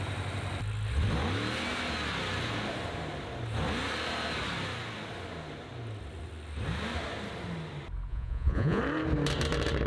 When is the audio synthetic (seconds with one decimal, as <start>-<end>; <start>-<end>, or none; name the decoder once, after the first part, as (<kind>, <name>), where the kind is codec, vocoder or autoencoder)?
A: 8.1-8.8 (vocoder, Vocos)